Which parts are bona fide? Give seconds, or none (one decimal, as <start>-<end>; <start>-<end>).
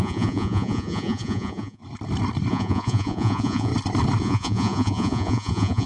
1.8-2.5; 3.7-4.2